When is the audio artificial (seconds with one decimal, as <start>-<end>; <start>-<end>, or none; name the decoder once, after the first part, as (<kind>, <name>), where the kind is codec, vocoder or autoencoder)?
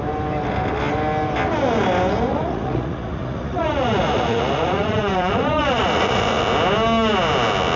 2.3-6.4 (vocoder, Vocos)